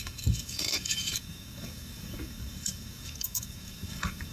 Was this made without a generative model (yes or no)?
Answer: no